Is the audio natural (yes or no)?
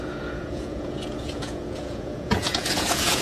no